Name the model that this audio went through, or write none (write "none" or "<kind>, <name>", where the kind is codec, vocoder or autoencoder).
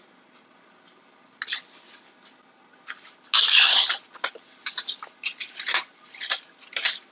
none